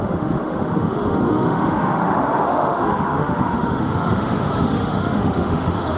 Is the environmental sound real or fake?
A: fake